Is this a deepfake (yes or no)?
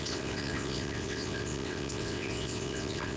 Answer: yes